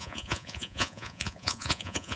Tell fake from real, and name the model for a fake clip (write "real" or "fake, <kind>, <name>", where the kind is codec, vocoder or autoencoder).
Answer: fake, vocoder, Vocos